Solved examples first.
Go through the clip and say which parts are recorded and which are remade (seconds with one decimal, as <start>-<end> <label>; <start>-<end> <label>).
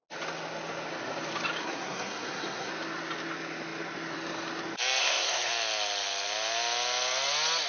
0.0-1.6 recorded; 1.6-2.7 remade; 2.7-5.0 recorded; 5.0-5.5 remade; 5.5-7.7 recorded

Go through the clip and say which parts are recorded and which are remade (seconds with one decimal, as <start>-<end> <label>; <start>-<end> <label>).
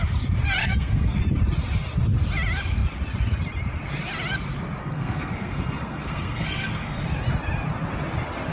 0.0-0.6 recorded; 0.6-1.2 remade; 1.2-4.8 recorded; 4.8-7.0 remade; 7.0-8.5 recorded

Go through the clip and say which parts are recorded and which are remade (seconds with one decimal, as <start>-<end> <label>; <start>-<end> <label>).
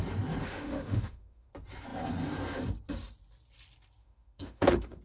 0.0-0.4 recorded; 0.4-1.5 remade; 1.5-4.0 recorded; 4.0-5.0 remade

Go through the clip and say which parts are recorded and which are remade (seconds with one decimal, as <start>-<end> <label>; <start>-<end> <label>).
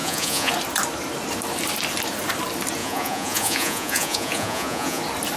0.0-0.5 remade; 0.5-2.8 recorded; 2.8-5.0 remade; 5.0-5.4 recorded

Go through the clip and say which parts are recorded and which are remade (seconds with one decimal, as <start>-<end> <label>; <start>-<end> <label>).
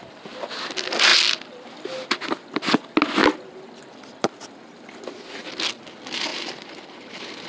0.0-7.5 recorded